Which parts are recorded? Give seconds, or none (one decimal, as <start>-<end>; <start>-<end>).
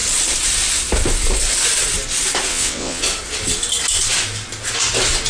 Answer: 0.0-2.5; 3.0-5.3